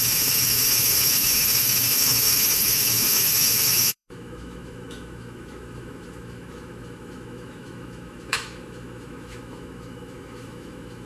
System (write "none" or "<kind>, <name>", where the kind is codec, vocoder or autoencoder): autoencoder, DAC-VAE